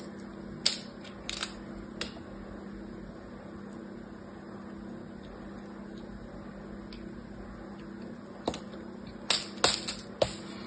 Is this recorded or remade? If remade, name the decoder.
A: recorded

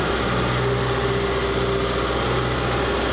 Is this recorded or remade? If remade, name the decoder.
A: recorded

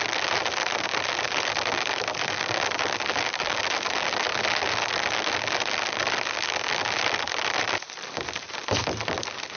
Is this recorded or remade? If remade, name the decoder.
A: recorded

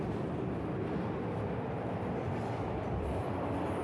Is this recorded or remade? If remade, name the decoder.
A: remade, vocoder, BigVGAN v2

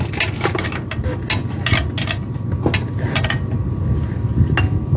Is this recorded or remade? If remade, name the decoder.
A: recorded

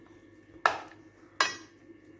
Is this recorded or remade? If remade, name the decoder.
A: recorded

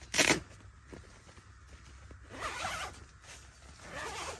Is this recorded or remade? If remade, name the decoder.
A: recorded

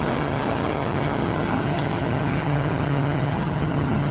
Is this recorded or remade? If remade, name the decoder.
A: remade, vocoder, HiFi-GAN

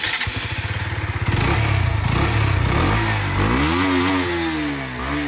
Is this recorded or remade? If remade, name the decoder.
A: recorded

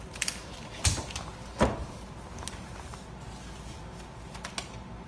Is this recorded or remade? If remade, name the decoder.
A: recorded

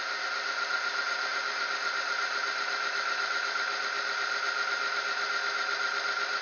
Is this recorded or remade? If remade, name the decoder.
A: recorded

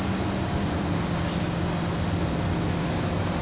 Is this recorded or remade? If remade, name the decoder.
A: recorded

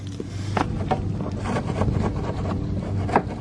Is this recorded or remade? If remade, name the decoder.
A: recorded